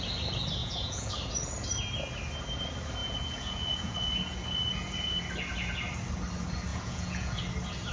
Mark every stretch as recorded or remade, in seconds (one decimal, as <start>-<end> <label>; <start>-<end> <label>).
0.0-0.6 recorded; 0.6-1.1 remade; 1.1-3.0 recorded; 3.0-5.2 remade; 5.2-6.7 recorded; 6.7-7.4 remade; 7.4-7.9 recorded